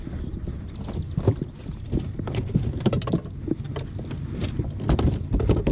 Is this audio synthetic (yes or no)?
no